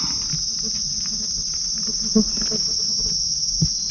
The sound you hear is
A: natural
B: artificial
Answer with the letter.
A